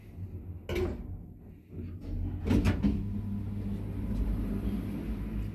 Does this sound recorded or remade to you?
recorded